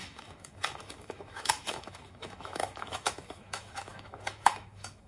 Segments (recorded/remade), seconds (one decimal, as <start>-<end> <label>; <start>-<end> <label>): 0.0-5.1 remade